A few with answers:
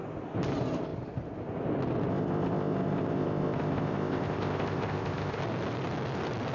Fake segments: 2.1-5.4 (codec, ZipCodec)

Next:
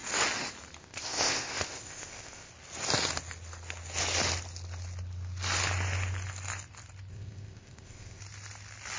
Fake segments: 0.8-2.5 (codec, ZipCodec); 7.1-8.2